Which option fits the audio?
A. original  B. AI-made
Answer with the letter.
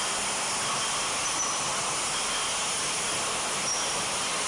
A